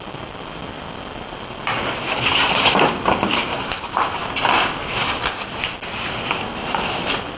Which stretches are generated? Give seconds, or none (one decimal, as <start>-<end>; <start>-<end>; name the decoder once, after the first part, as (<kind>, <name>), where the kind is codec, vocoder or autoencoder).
none